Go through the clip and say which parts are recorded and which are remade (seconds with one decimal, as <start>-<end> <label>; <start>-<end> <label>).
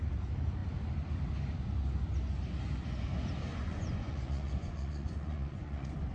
0.0-3.5 recorded; 3.5-6.1 remade